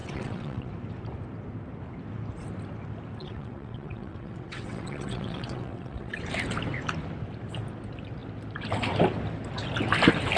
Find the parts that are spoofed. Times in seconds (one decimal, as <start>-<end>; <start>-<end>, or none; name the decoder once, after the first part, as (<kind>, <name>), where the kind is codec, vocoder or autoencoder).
0.0-0.7 (vocoder, WaveNeXt); 3.2-6.2